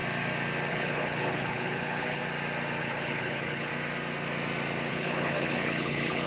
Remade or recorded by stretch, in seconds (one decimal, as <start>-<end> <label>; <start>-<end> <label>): 0.0-0.7 recorded; 0.7-2.2 remade; 2.2-2.8 recorded; 2.8-3.7 remade; 3.7-4.9 recorded; 4.9-6.3 remade